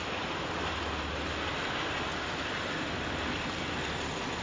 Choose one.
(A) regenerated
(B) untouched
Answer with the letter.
B